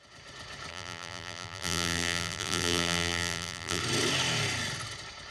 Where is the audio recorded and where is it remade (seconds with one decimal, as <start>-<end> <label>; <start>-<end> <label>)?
0.0-0.7 recorded; 0.7-3.8 remade; 3.8-5.3 recorded

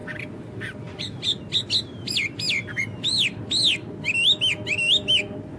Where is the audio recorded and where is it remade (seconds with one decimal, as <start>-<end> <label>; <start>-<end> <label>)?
0.0-1.4 remade; 1.4-5.6 recorded

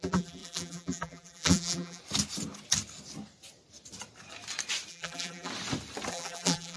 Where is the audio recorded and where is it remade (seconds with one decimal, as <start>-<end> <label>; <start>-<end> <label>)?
0.0-2.0 remade; 2.0-4.9 recorded; 4.9-5.5 remade; 5.5-6.1 recorded; 6.1-6.8 remade

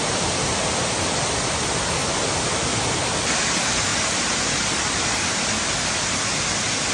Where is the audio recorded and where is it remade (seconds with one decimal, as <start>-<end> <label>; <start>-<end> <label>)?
0.0-2.0 recorded; 2.0-2.6 remade; 2.6-6.9 recorded

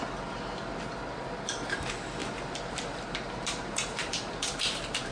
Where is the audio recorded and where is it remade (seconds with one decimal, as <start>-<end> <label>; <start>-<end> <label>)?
0.0-2.2 recorded; 2.2-5.1 remade

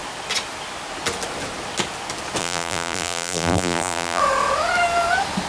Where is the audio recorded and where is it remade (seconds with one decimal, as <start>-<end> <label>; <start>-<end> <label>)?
0.0-2.4 recorded; 2.4-4.2 remade; 4.2-5.5 recorded

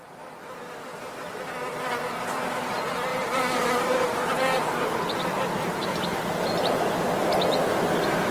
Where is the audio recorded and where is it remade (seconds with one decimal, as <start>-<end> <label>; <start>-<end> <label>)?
0.0-1.7 recorded; 1.7-2.4 remade; 2.4-3.1 recorded; 3.1-7.2 remade; 7.2-8.3 recorded

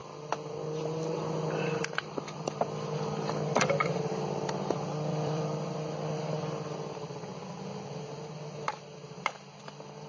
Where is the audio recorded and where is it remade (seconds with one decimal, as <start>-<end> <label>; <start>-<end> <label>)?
0.0-0.5 recorded; 0.5-7.3 remade; 7.3-9.6 recorded; 9.6-10.1 remade